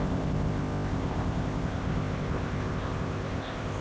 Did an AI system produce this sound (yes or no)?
yes